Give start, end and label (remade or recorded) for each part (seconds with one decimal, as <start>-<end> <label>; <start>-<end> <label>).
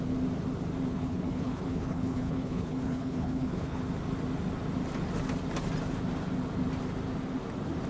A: 0.0-0.9 recorded; 0.9-3.8 remade; 3.8-7.9 recorded